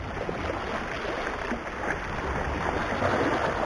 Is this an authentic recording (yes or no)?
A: yes